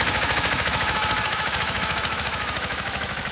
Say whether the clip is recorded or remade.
remade